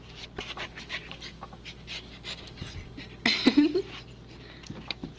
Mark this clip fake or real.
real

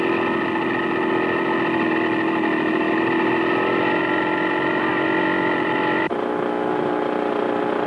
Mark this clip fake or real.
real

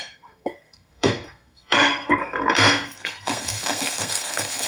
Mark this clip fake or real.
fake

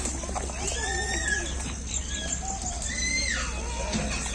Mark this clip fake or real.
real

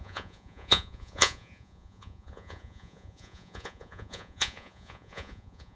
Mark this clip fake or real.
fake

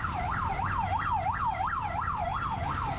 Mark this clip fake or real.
real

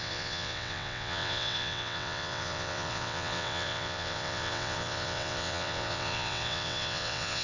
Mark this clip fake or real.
fake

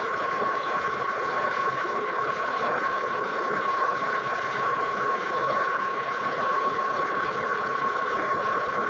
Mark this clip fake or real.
fake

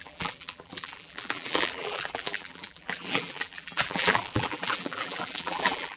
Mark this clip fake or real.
fake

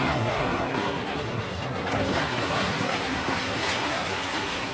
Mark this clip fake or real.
fake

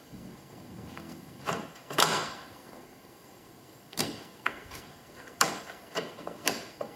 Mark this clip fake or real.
fake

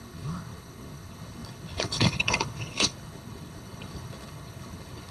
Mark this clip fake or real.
fake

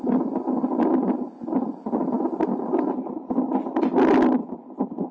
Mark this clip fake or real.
real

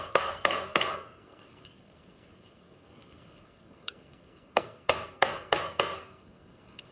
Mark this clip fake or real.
fake